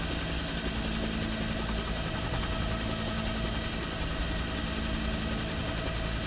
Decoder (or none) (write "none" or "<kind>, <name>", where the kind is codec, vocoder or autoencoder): none